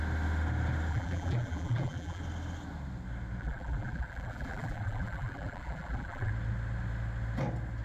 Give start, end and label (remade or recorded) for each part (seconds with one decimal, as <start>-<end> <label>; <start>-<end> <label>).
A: 0.0-0.9 recorded; 0.9-2.2 remade; 2.2-3.4 recorded; 3.4-6.3 remade; 6.3-7.8 recorded